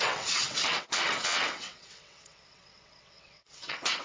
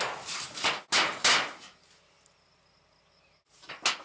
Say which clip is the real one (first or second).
second